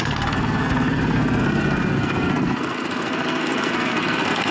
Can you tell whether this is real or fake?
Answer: fake